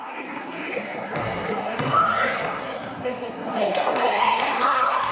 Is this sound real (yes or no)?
no